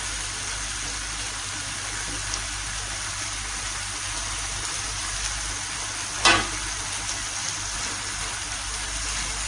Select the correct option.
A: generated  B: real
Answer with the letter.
B